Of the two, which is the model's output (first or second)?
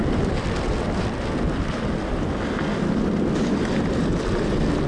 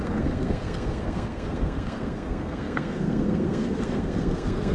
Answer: second